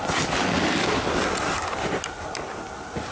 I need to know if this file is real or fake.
real